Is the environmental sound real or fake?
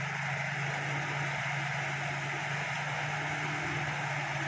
real